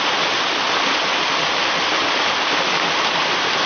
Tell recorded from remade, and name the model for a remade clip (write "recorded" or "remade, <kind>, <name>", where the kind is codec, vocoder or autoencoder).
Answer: recorded